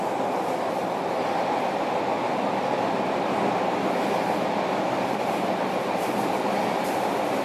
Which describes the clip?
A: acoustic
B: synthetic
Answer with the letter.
A